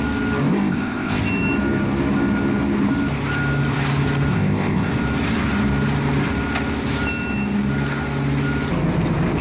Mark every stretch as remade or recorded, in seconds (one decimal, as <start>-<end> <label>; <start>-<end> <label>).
0.0-0.5 recorded; 0.5-1.2 remade; 1.2-4.3 recorded; 4.3-4.9 remade; 4.9-9.4 recorded